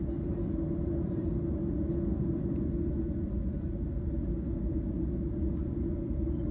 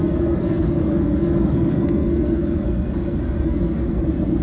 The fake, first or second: second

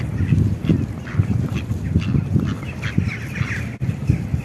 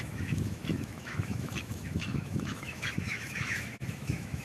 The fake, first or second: second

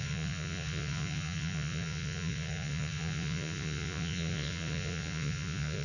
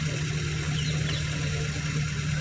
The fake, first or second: first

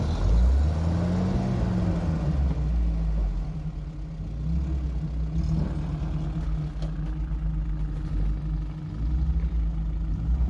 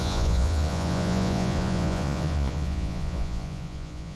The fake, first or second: second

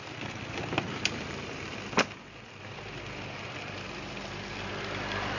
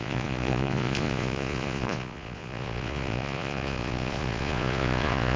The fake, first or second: second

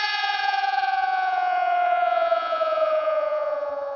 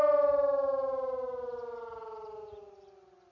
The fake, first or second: first